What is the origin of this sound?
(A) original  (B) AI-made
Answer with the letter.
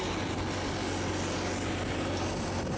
A